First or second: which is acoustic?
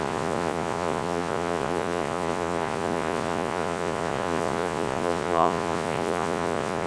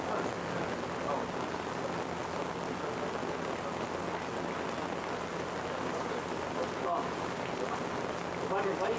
second